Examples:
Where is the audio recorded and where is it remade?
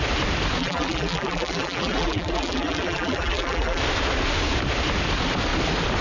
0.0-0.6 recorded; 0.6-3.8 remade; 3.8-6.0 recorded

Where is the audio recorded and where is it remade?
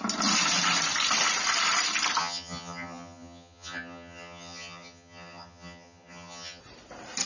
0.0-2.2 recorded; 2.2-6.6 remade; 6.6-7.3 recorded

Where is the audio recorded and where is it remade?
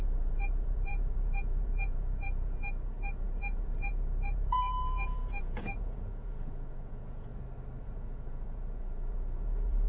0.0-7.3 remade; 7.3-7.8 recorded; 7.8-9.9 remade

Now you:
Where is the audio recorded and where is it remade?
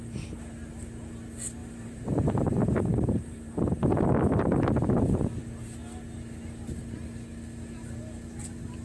0.0-1.6 recorded; 1.6-3.6 remade; 3.6-8.8 recorded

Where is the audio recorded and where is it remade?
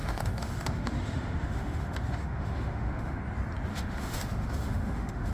0.0-3.2 remade; 3.2-3.7 recorded; 3.7-5.3 remade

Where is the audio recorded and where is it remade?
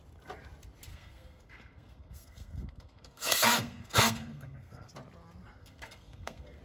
0.0-0.9 recorded; 0.9-4.9 remade; 4.9-5.6 recorded; 5.6-6.6 remade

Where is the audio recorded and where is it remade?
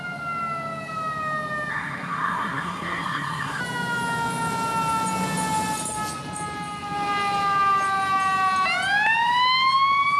0.0-1.7 recorded; 1.7-3.6 remade; 3.6-10.2 recorded